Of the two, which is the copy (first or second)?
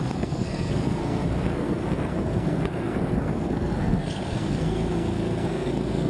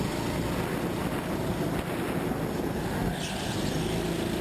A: first